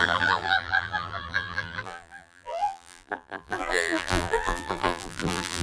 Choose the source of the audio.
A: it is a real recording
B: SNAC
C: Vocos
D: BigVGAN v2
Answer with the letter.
D